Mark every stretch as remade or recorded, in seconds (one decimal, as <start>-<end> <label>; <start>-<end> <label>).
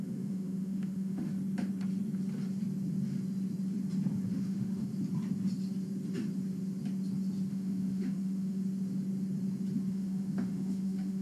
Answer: 0.0-1.3 remade; 1.3-4.3 recorded; 4.3-4.9 remade; 4.9-7.5 recorded; 7.5-8.6 remade; 8.6-9.9 recorded; 9.9-11.2 remade